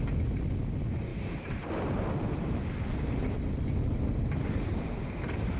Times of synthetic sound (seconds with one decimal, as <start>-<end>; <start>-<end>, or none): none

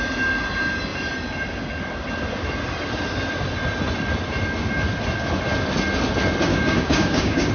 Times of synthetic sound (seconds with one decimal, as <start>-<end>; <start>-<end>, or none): 6.5-7.5

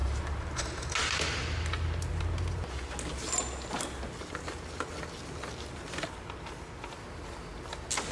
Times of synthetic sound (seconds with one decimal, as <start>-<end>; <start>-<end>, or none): 0.0-0.6

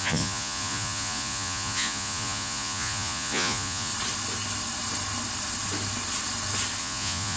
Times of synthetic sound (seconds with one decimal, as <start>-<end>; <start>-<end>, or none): 0.0-3.9; 6.8-7.4

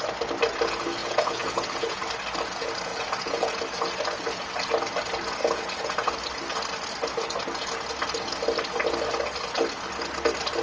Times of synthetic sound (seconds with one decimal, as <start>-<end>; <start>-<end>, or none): 1.0-2.0; 2.9-3.6; 5.4-6.1

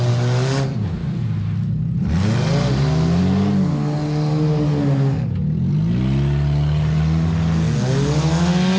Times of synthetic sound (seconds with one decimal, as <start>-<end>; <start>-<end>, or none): none

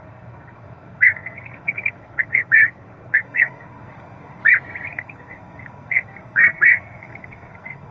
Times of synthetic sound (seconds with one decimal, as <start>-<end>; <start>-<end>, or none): 0.0-4.4; 4.9-7.9

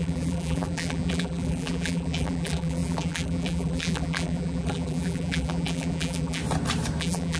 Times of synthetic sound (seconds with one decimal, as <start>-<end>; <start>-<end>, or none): 0.0-6.4; 7.0-7.4